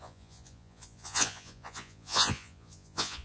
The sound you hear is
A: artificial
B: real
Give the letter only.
A